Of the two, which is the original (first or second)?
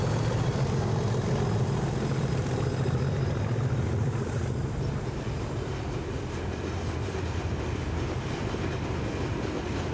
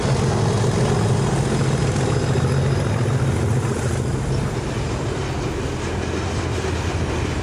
second